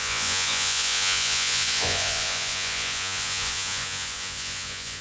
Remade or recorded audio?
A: remade